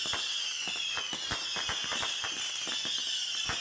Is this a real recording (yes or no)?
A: yes